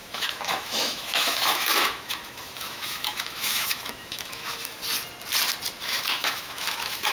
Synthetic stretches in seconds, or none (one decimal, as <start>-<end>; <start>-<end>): 0.0-4.8; 5.8-7.1